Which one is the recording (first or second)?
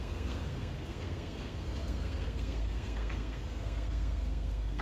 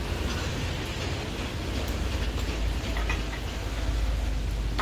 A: second